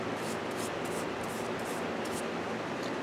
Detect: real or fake real